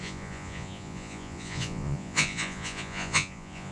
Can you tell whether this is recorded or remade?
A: remade